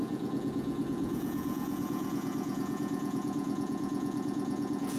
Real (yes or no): no